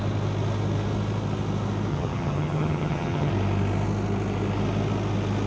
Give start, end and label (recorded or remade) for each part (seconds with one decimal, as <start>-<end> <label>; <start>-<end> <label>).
0.0-1.9 recorded; 1.9-3.3 remade; 3.3-5.5 recorded